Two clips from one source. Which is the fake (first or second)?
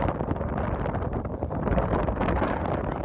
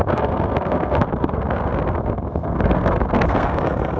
second